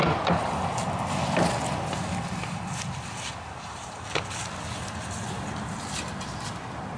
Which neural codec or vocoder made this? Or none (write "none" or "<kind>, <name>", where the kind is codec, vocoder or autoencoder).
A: none